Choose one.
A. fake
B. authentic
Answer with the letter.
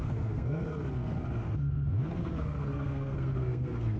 A